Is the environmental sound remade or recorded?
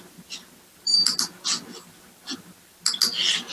recorded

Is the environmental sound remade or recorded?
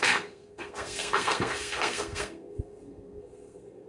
remade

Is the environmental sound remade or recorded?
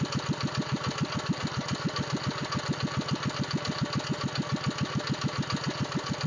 recorded